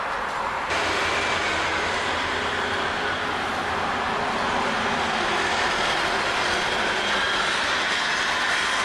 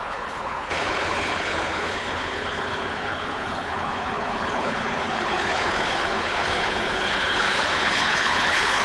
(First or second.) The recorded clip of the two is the first